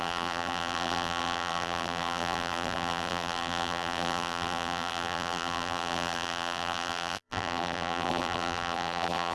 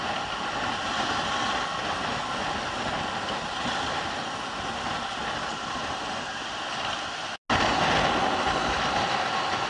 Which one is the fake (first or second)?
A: first